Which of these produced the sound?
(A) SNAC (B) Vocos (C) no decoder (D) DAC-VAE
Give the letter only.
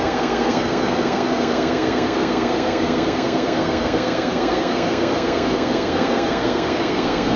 A